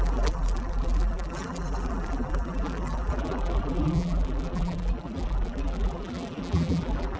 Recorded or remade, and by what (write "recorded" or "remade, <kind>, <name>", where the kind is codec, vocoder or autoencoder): remade, vocoder, BigVGAN v2